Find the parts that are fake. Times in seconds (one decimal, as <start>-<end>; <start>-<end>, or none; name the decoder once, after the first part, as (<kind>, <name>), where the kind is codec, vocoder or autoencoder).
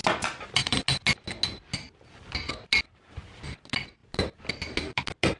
none